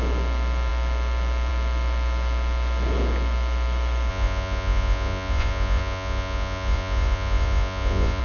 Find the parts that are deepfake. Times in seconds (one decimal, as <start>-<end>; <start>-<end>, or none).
4.1-8.2